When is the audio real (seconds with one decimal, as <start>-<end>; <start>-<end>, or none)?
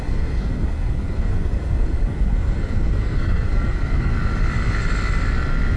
4.1-5.8